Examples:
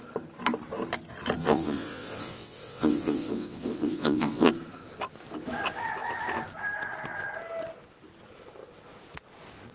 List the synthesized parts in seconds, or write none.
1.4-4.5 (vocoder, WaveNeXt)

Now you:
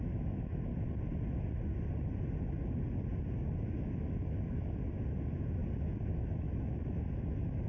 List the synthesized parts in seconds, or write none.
0.0-0.7 (autoencoder, DAC-VAE); 3.7-5.6; 6.1-7.7